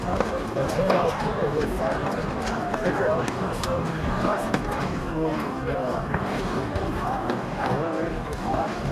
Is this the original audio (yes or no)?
no